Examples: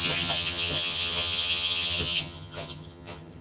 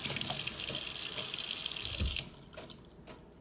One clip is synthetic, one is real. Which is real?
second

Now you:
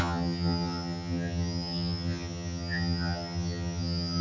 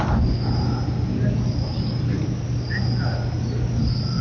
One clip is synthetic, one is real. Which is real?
second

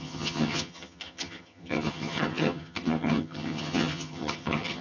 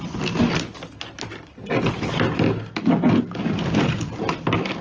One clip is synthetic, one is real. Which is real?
second